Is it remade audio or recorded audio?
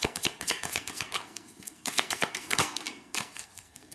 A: remade